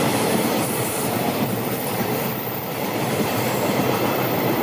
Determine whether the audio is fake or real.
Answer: fake